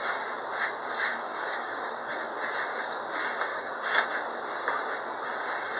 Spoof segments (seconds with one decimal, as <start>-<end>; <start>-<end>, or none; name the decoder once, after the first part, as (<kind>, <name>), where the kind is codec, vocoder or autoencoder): 1.1-2.2 (codec, DAC); 3.5-4.1

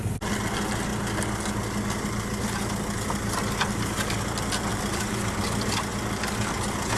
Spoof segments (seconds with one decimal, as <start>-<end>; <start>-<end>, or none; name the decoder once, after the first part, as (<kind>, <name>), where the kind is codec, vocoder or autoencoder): 4.7-5.3 (vocoder, BigVGAN v2)

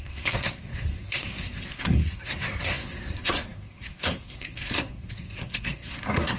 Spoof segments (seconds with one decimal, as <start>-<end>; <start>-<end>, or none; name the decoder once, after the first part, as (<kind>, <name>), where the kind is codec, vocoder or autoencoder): 0.0-6.4 (codec, SNAC)

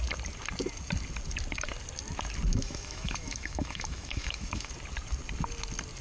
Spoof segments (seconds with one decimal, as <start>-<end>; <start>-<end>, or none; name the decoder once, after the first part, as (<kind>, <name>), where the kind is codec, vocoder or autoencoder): 2.5-4.7 (autoencoder, DAC-VAE)

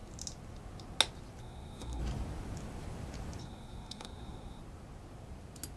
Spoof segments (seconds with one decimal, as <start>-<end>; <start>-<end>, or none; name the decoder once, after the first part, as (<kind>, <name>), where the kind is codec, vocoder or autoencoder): 1.4-2.0 (codec, SNAC); 3.4-4.6